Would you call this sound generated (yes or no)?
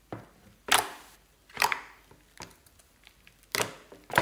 no